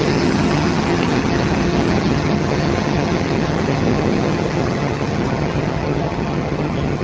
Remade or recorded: remade